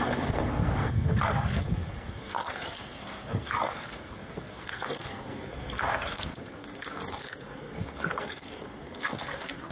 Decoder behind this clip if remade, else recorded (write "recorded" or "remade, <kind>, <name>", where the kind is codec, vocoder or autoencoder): remade, codec, SNAC